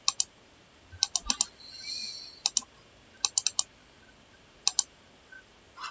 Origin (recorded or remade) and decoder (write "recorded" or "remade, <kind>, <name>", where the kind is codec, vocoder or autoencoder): recorded